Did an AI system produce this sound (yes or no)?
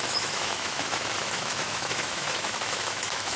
yes